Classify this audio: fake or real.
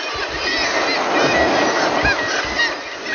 real